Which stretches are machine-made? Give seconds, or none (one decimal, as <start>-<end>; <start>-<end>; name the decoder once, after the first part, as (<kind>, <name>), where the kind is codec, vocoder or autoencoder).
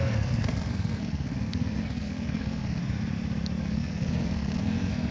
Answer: 0.0-2.8 (codec, SNAC); 3.6-5.1